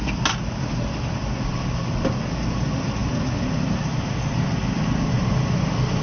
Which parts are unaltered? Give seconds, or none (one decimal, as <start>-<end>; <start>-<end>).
0.0-6.0